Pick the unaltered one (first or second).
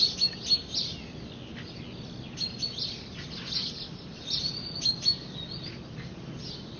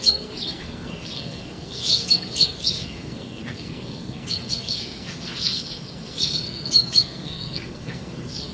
first